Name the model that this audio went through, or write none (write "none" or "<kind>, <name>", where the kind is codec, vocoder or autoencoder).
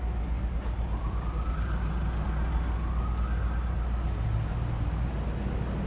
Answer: none